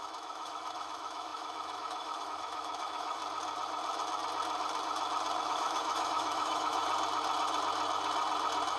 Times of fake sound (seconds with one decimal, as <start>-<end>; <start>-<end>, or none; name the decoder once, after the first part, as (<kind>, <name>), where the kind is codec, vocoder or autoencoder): 0.0-3.2 (autoencoder, DAC-VAE); 5.4-6.8